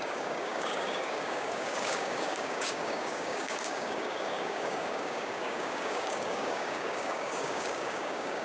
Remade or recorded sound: remade